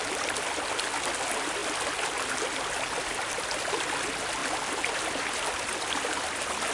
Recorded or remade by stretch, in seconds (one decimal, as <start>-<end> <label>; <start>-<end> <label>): 0.0-6.7 recorded